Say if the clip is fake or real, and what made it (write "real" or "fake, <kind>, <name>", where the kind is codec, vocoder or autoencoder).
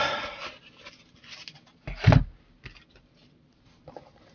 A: real